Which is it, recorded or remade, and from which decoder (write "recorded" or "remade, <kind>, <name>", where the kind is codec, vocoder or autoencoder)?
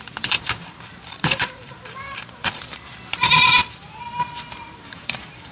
remade, vocoder, BigVGAN v2